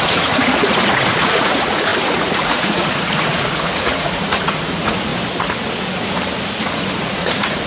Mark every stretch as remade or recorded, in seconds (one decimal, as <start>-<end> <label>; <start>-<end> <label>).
0.0-5.1 remade; 5.1-6.6 recorded; 6.6-7.7 remade